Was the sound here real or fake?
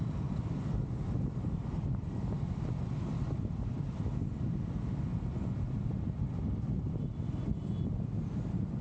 real